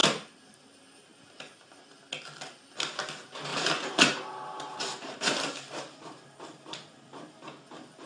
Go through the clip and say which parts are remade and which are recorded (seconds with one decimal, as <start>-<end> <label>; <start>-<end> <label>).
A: 0.0-0.6 remade; 0.6-3.5 recorded; 3.5-5.4 remade; 5.4-8.1 recorded